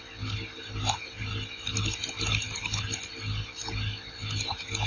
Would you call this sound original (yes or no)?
yes